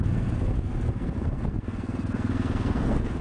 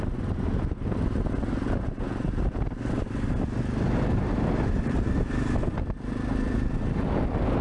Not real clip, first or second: first